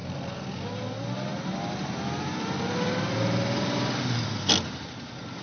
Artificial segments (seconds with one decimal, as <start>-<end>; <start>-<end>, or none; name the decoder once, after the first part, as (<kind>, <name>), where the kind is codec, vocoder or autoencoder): none